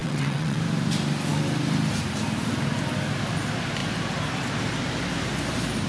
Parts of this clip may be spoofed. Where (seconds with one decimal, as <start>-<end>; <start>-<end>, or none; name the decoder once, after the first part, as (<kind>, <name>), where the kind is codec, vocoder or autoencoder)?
0.0-0.6 (vocoder, WaveNeXt)